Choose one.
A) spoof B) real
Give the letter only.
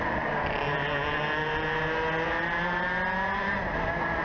B